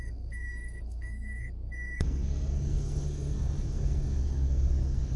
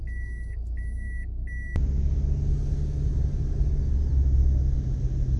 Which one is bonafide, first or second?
second